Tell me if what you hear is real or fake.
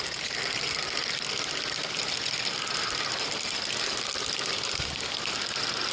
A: real